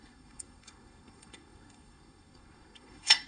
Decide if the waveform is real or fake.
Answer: fake